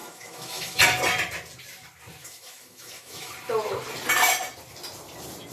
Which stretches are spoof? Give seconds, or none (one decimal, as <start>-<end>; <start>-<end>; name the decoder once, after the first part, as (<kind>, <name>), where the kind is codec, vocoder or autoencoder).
0.0-0.8 (autoencoder, DAC-VAE); 2.2-3.3